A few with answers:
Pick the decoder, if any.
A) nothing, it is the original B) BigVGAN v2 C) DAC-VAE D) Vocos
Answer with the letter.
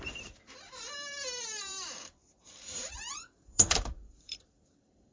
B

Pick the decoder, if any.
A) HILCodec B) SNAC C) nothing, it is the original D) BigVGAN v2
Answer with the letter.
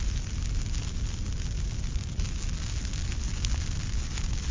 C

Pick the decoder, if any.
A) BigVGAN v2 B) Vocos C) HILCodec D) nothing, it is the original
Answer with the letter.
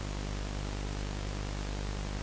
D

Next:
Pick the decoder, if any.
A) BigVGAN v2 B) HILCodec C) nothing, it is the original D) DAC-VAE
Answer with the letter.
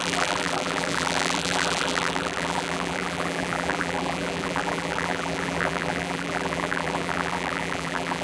A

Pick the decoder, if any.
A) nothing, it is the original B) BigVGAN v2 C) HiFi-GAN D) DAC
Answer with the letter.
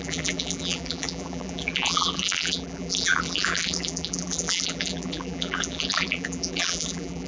B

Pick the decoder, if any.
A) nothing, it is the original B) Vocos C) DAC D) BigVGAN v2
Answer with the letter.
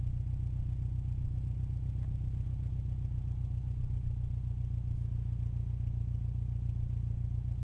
A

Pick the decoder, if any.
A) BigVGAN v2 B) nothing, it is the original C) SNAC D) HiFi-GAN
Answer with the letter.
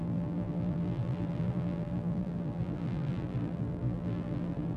A